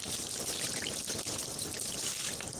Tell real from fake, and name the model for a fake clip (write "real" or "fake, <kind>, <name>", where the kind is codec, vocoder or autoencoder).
fake, vocoder, BigVGAN v2